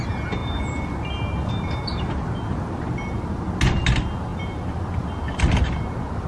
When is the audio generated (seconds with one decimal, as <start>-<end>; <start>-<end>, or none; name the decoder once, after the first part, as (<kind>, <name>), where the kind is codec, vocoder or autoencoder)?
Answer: none